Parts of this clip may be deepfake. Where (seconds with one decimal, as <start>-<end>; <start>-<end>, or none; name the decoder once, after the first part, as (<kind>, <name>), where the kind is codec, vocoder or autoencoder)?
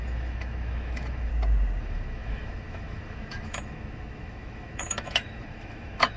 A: 0.0-1.3 (autoencoder, DAC-VAE); 1.8-6.2